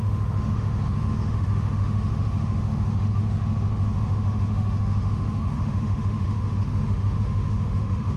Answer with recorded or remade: remade